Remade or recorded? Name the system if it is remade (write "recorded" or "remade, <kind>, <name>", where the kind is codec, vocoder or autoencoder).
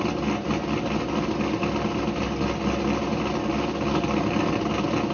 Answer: recorded